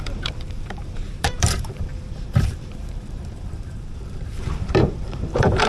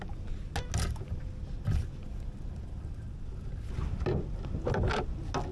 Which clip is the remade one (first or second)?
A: first